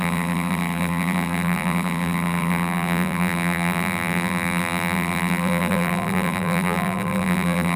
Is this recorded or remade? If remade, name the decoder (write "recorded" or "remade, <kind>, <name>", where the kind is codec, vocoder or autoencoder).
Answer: remade, vocoder, BigVGAN v2